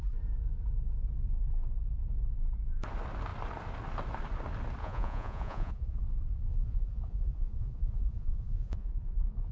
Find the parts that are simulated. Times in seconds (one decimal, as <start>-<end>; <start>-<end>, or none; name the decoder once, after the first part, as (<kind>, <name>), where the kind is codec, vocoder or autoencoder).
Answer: 4.8-6.0 (vocoder, Vocos); 6.5-9.5